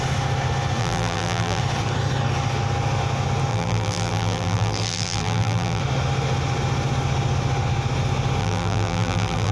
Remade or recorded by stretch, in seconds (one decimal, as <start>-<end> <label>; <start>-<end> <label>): 0.0-0.8 recorded; 0.8-1.6 remade; 1.6-3.5 recorded; 3.5-5.8 remade; 5.8-8.4 recorded; 8.4-9.5 remade